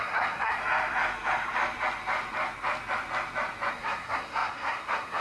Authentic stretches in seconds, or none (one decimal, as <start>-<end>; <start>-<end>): 0.6-3.7